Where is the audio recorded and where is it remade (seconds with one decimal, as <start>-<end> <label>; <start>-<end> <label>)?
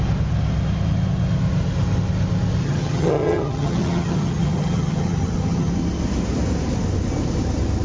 0.0-2.6 recorded; 2.6-5.7 remade; 5.7-7.8 recorded